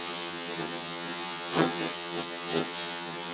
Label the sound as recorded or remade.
remade